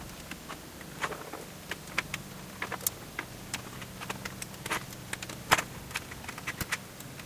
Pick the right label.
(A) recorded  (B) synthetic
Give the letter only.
A